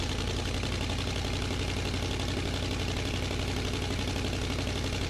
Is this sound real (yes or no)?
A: yes